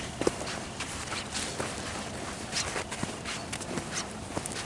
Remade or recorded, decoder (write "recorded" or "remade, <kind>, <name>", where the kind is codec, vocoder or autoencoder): recorded